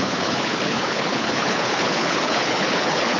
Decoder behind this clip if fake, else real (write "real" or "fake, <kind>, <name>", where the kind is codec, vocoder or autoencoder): fake, codec, HILCodec